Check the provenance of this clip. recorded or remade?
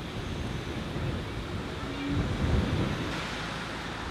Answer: recorded